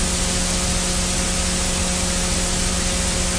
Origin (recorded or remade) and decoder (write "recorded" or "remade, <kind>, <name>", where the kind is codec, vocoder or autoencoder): recorded